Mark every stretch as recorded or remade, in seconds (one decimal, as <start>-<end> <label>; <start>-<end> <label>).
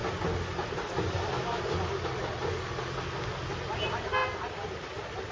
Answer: 0.0-5.3 recorded